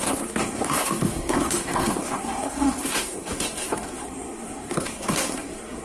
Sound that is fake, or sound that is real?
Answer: fake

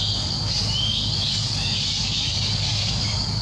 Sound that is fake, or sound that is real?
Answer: fake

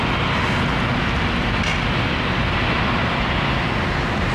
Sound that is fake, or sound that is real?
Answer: real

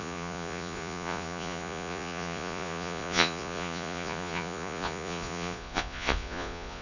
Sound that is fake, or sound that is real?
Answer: fake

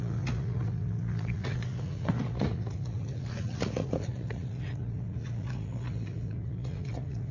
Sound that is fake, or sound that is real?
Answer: fake